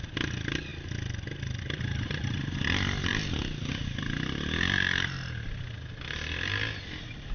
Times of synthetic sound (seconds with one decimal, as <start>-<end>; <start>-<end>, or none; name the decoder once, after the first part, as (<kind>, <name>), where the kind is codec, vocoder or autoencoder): none